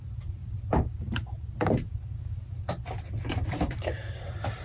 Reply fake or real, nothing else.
fake